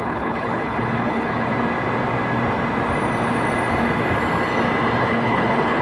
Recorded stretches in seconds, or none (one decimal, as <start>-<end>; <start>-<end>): 1.5-5.0